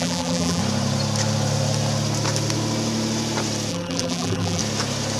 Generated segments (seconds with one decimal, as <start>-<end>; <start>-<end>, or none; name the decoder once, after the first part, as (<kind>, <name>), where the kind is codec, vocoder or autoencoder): 0.0-0.6 (vocoder, BigVGAN v2); 3.7-4.6